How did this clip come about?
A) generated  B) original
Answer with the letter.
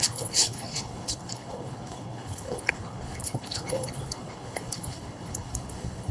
A